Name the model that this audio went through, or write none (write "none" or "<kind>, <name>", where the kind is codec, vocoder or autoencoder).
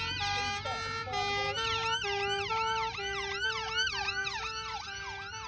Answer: none